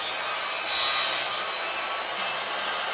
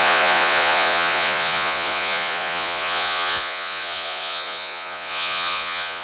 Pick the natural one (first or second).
first